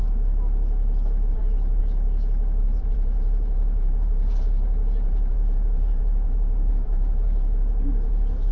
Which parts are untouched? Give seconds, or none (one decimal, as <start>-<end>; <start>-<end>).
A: 0.0-1.3; 1.8-2.6